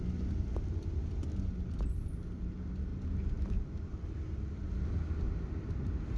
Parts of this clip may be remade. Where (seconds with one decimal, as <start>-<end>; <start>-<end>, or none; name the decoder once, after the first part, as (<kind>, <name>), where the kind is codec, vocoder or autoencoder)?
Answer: none